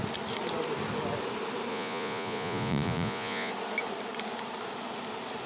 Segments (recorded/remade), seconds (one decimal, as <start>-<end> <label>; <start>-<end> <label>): 0.0-1.7 recorded; 1.7-3.5 remade; 3.5-5.5 recorded